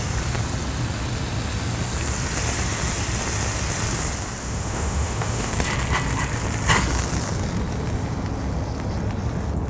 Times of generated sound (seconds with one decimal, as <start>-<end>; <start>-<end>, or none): 4.4-5.5